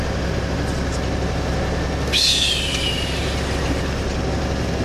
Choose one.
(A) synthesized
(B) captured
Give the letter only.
B